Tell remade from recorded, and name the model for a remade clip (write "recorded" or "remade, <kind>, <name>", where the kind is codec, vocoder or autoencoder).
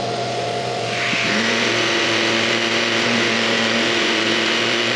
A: remade, vocoder, Vocos